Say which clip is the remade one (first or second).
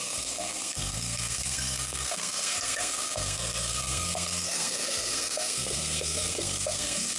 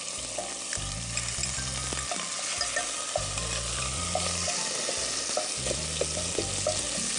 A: first